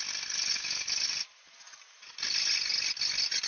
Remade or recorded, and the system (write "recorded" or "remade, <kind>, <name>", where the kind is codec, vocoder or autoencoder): recorded